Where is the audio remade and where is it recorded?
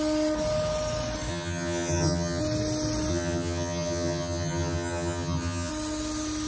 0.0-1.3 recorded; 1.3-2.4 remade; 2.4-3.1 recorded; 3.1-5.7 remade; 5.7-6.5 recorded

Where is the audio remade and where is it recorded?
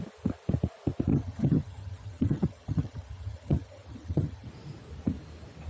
0.0-1.1 recorded; 1.1-4.5 remade; 4.5-5.7 recorded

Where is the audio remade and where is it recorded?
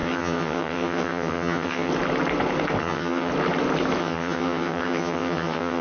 0.0-1.9 remade; 1.9-2.8 recorded; 2.8-3.3 remade; 3.3-4.0 recorded; 4.0-5.8 remade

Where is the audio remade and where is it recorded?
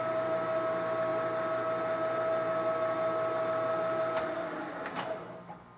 0.0-5.8 recorded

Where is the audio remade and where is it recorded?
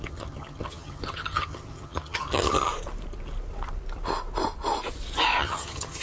0.0-2.7 remade; 2.7-5.4 recorded; 5.4-6.0 remade